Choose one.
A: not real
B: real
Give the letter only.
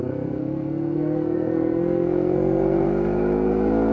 A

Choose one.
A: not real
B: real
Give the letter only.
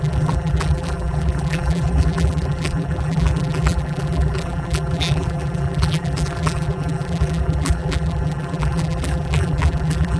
A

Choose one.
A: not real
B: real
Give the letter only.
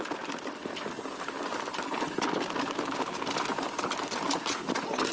B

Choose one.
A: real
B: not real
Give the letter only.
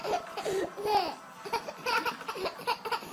B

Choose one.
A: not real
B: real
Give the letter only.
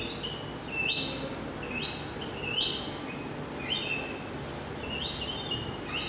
B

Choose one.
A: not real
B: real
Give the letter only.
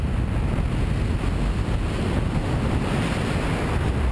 B